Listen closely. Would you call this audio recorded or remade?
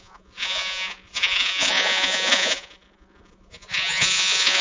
remade